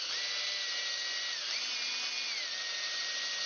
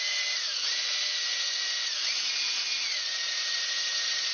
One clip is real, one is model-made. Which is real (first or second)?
first